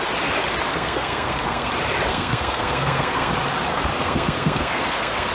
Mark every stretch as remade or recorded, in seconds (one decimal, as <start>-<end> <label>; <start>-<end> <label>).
0.0-0.7 recorded; 0.7-1.7 remade; 1.7-2.1 recorded; 2.1-3.3 remade; 3.3-3.7 recorded; 3.7-5.3 remade